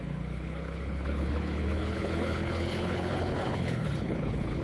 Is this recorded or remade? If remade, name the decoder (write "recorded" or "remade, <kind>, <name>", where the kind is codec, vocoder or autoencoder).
remade, codec, HILCodec